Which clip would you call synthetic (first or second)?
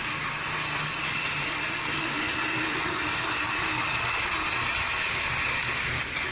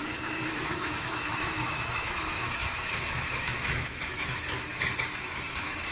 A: second